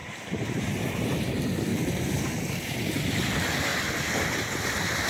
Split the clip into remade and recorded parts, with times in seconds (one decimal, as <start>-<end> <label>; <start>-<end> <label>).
0.0-1.2 remade; 1.2-1.7 recorded; 1.7-2.8 remade; 2.8-5.1 recorded